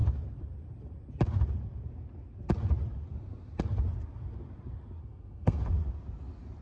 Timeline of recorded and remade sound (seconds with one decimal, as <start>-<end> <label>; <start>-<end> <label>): 0.0-5.0 recorded; 5.0-5.6 remade; 5.6-6.6 recorded